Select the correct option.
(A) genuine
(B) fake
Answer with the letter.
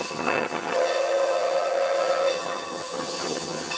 B